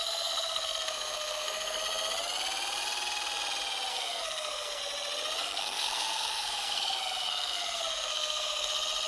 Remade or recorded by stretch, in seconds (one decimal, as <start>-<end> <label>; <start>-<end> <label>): 0.0-1.8 remade; 1.8-3.9 recorded; 3.9-4.8 remade; 4.8-5.4 recorded; 5.4-8.7 remade; 8.7-9.1 recorded

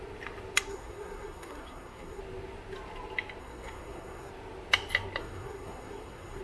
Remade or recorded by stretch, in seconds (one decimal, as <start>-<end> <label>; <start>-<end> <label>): 0.0-0.7 recorded; 0.7-2.2 remade; 2.2-3.4 recorded; 3.4-4.3 remade; 4.3-5.2 recorded; 5.2-6.4 remade

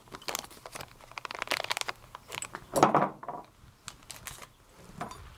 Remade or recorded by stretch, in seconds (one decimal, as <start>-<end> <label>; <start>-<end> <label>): 0.0-5.4 recorded

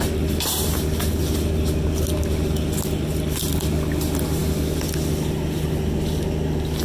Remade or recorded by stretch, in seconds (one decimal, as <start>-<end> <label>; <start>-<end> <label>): 0.0-6.8 recorded

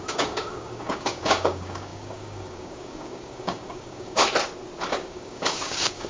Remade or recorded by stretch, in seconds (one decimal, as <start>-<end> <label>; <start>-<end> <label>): 0.0-4.2 remade; 4.2-4.9 recorded; 4.9-6.1 remade

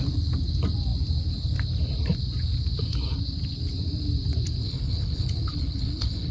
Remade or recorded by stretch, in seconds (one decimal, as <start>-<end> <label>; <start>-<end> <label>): 0.0-4.6 recorded; 4.6-6.3 remade

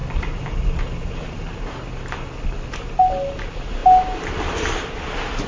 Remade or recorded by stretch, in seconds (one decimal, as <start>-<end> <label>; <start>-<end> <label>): 0.0-5.5 recorded